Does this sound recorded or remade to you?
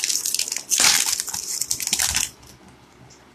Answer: recorded